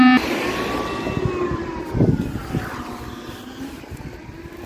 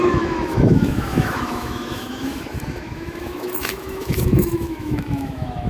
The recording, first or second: first